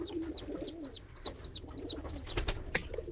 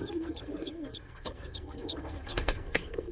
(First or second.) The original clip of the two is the first